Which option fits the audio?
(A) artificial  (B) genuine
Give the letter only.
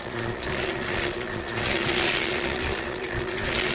A